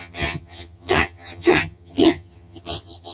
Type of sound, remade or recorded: remade